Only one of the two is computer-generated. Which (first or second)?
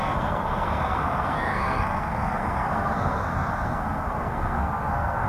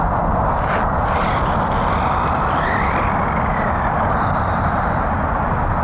first